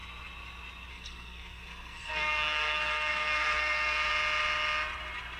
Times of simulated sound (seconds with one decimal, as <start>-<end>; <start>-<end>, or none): 0.9-4.1